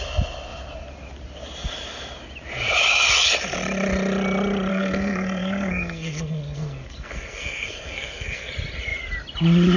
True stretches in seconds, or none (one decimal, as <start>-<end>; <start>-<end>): 0.0-4.7; 8.5-9.8